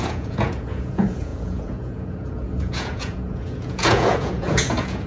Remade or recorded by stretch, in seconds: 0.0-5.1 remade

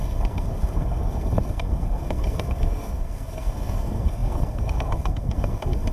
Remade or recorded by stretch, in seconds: 0.0-5.9 remade

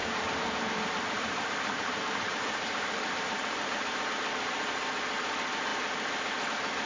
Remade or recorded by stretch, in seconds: 0.0-4.1 remade; 4.1-6.9 recorded